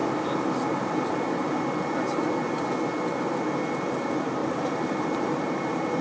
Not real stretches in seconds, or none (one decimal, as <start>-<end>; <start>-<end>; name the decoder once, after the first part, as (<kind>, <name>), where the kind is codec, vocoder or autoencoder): 4.4-5.6 (vocoder, BigVGAN v2)